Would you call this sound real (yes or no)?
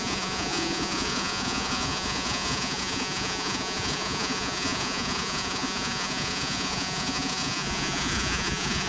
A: no